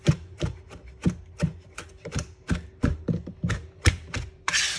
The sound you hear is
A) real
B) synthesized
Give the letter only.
B